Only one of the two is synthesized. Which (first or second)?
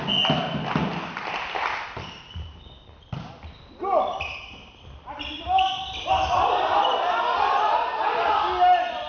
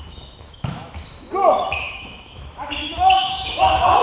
second